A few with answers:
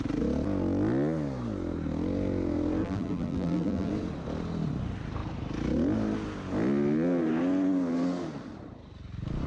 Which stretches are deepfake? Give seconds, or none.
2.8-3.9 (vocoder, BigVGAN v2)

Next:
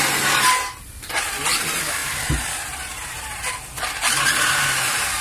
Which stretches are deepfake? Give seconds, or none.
2.0-3.5 (vocoder, BigVGAN v2)

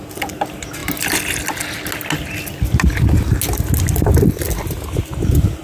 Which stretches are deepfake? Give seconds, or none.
none

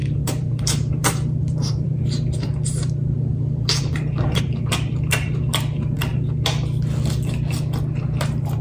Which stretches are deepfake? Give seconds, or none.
0.0-6.1 (vocoder, BigVGAN v2); 8.2-8.6

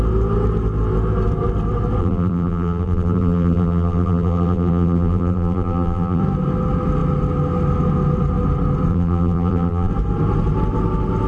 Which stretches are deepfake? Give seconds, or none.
2.0-6.2 (vocoder, BigVGAN v2); 8.9-9.9